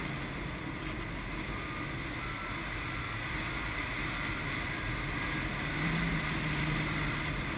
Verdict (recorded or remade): recorded